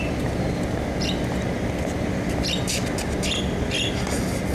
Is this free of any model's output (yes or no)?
yes